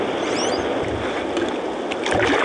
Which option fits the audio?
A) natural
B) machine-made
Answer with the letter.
A